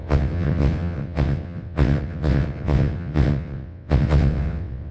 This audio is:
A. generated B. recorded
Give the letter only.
A